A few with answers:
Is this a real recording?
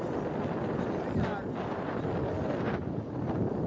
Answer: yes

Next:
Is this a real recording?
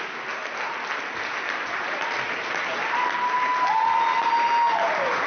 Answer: yes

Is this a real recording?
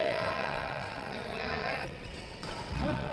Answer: no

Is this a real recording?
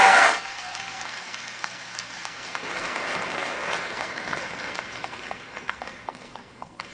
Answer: no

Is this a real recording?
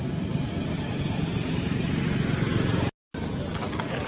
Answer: yes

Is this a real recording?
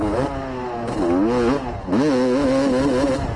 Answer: yes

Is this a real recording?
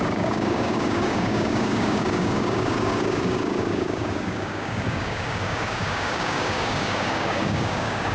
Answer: no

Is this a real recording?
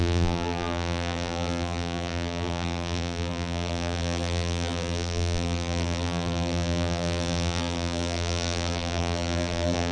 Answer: no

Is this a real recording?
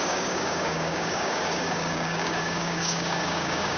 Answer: no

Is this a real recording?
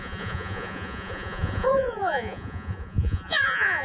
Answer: no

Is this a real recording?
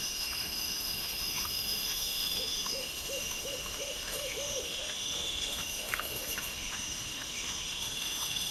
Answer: no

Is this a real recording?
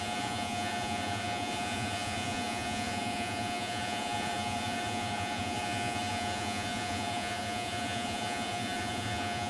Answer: no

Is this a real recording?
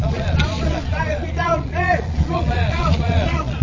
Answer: no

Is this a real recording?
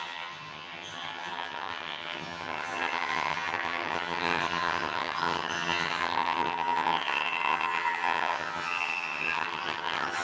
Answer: no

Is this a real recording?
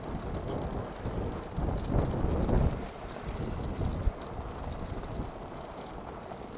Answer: yes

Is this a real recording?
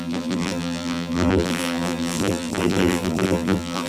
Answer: no